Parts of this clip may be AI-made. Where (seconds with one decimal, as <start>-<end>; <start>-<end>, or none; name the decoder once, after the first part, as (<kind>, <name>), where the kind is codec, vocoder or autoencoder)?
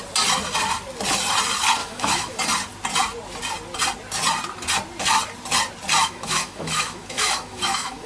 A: 1.8-2.4 (autoencoder, DAC-VAE); 6.0-8.1